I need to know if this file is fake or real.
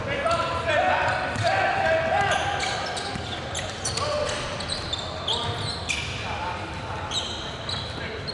real